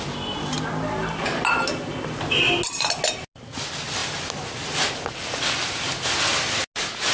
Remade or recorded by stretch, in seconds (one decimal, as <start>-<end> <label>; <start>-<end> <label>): 0.0-7.1 recorded